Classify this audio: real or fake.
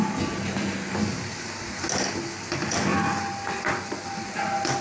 real